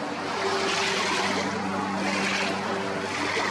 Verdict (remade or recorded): recorded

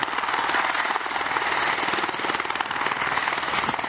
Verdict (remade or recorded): recorded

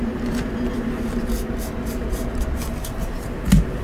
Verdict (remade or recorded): recorded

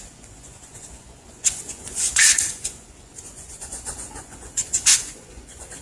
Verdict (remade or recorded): remade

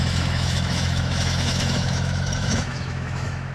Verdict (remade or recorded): remade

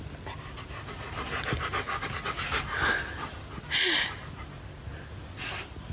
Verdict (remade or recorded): recorded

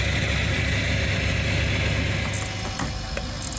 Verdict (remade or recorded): recorded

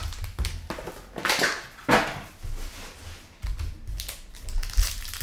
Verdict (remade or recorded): recorded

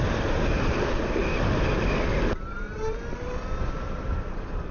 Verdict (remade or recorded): recorded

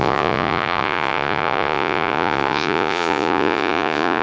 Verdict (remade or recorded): remade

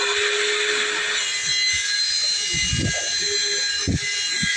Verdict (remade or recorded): recorded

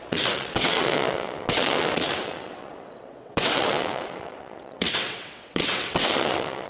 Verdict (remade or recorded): remade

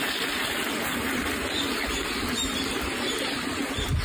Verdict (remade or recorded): remade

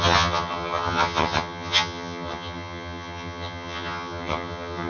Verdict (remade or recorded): remade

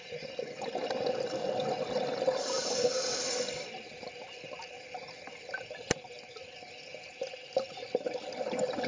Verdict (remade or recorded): recorded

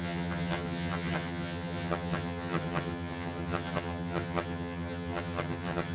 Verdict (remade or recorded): remade